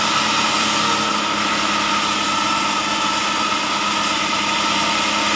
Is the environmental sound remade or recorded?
recorded